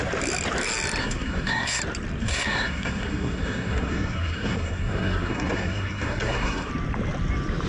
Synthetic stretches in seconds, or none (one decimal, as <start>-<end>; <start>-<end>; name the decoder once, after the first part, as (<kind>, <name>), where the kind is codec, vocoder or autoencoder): 1.0-1.8 (codec, SNAC); 2.2-6.7